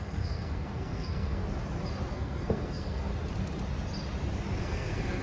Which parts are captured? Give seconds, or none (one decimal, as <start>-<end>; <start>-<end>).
1.4-2.1; 3.1-4.6